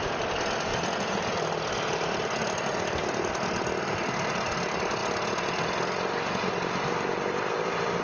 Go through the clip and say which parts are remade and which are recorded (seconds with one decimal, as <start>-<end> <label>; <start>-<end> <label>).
0.0-8.0 recorded